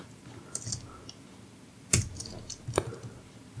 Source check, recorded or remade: recorded